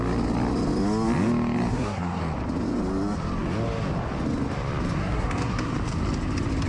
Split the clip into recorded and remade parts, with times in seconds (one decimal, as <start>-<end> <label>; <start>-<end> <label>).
0.0-1.7 recorded; 1.7-2.2 remade; 2.2-5.0 recorded; 5.0-5.7 remade; 5.7-6.7 recorded